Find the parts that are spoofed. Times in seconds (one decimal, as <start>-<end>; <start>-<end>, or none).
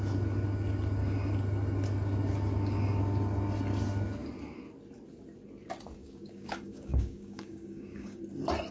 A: 6.0-8.2